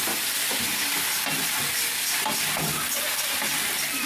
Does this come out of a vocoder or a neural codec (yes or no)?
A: no